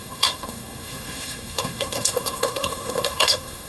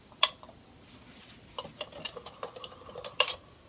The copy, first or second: first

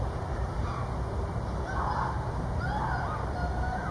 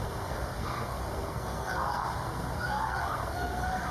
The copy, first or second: second